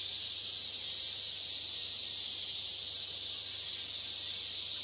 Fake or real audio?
real